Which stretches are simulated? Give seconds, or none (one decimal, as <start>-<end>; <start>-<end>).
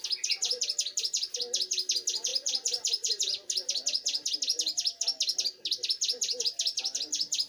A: none